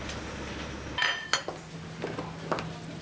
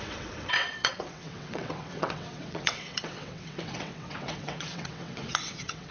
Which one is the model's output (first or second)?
second